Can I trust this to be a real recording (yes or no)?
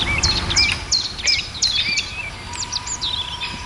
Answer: yes